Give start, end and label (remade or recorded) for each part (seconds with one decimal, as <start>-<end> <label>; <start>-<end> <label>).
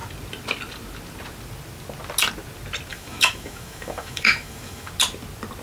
0.0-2.9 recorded; 2.9-4.9 remade; 4.9-5.6 recorded